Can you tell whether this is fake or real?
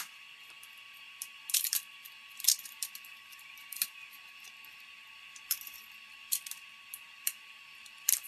fake